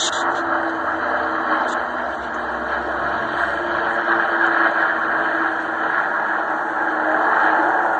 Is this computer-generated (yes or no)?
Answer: no